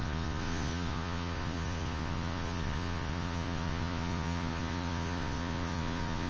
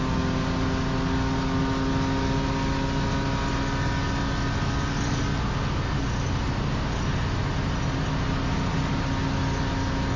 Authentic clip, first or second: second